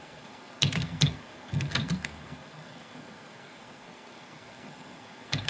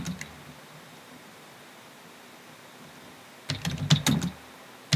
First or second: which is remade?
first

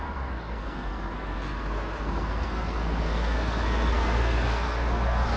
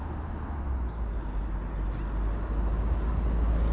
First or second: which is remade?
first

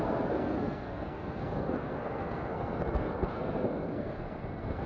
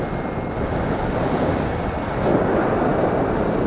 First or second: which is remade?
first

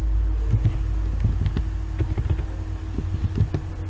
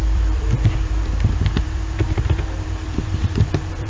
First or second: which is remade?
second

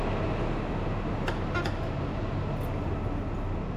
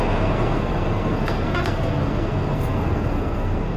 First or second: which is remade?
second